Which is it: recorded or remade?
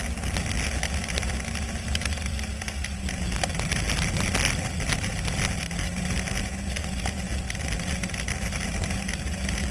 recorded